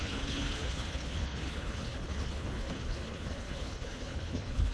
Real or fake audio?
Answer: fake